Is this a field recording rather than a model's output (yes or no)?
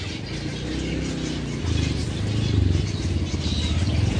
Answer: yes